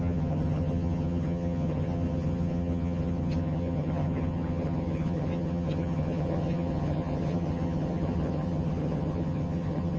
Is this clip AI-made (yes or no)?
yes